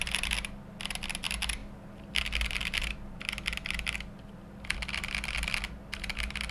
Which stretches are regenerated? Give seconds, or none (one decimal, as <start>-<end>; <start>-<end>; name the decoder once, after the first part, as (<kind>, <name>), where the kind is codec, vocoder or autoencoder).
none